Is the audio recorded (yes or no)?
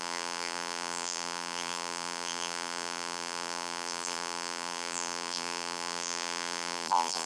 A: no